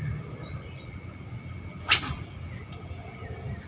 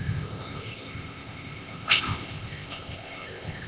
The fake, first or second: second